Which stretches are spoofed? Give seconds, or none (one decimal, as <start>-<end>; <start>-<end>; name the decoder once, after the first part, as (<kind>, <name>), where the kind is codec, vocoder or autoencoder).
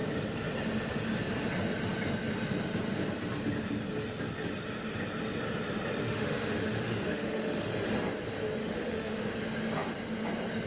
6.0-7.7 (autoencoder, DAC-VAE); 8.6-9.2